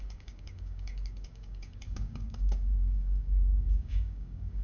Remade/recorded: remade